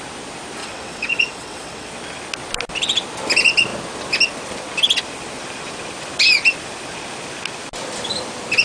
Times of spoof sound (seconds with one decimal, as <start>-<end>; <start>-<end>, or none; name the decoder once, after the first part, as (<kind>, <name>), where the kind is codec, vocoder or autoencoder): 0.6-1.9 (vocoder, WaveNeXt)